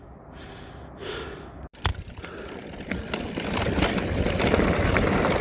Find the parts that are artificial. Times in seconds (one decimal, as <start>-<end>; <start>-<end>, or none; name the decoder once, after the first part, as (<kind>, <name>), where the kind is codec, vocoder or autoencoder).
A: none